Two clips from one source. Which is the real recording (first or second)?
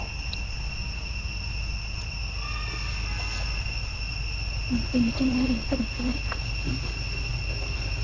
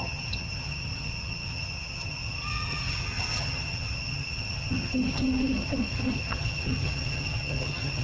first